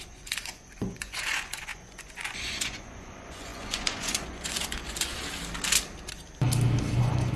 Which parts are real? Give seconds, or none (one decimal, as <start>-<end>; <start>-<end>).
5.1-7.0